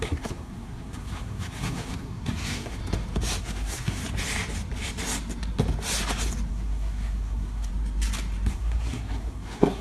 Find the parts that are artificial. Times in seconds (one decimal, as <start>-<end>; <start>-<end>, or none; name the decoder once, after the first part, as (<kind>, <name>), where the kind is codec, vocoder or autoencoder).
0.0-2.8 (codec, SNAC); 3.4-4.0; 6.5-7.7; 8.5-9.8